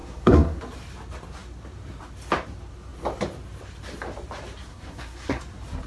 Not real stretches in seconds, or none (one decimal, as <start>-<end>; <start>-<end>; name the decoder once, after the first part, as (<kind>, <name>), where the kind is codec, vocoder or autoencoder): 0.0-0.6 (codec, SNAC); 4.7-5.4